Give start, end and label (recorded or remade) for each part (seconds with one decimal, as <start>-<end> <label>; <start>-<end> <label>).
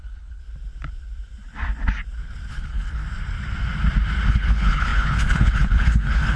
0.0-0.4 remade; 0.4-2.5 recorded; 2.5-3.0 remade; 3.0-4.3 recorded; 4.3-6.4 remade